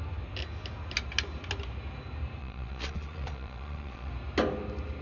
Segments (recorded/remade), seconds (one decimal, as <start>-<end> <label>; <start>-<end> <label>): 0.0-2.4 recorded; 2.4-4.1 remade; 4.1-5.0 recorded